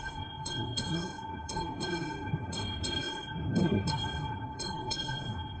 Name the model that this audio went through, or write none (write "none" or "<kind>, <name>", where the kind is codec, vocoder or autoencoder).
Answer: codec, SNAC